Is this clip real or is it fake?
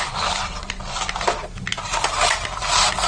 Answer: real